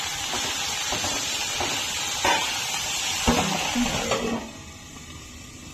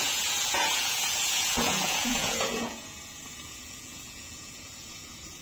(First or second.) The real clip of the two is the first